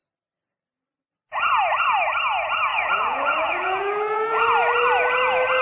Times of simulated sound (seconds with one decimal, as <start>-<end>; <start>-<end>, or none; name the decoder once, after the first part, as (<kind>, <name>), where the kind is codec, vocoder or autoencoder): 2.7-4.4 (vocoder, Vocos)